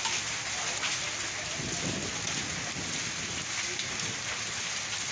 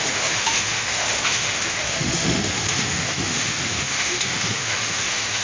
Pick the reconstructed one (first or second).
second